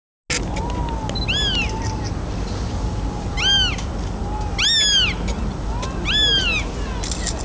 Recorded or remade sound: recorded